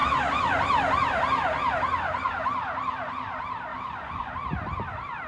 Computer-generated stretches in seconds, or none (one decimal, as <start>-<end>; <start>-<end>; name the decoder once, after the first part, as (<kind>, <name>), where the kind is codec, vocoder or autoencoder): 3.7-4.3 (vocoder, Vocos)